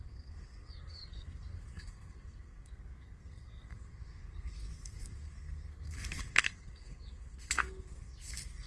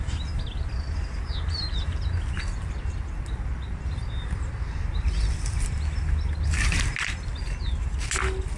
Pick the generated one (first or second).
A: first